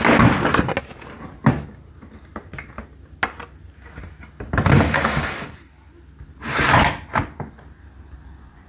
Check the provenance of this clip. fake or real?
real